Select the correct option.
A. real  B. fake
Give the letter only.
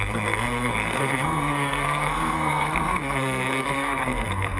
B